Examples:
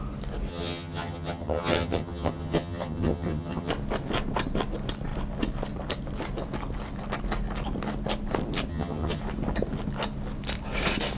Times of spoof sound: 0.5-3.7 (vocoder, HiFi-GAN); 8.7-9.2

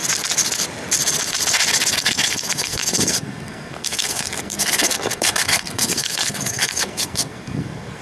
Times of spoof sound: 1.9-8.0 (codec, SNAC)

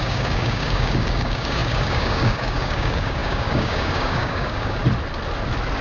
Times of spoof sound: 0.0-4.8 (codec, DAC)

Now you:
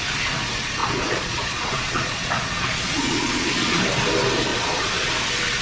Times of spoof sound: 0.8-3.8 (vocoder, Vocos); 4.5-5.1

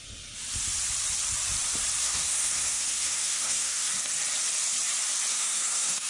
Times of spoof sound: 2.0-3.9 (codec, SNAC); 5.3-6.1

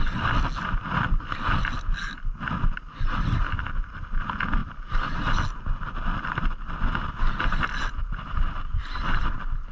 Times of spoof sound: none

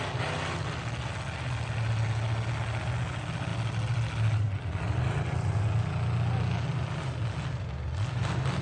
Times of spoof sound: none

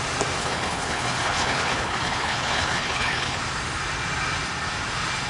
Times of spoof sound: 0.4-3.4 (codec, HILCodec)